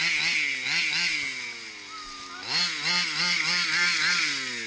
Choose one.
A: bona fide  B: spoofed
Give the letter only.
A